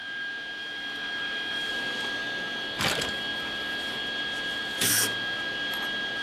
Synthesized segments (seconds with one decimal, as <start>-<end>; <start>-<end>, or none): 0.0-1.7